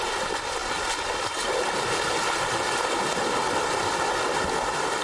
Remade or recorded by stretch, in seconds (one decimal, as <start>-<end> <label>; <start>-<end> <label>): 0.0-5.0 recorded